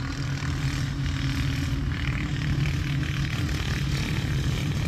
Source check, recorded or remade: recorded